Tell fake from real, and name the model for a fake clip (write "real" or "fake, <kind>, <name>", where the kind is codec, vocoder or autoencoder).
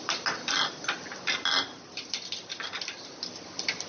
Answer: real